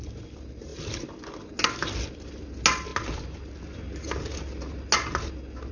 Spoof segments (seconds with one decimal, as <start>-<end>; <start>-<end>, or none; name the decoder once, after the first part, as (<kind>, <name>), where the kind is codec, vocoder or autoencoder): none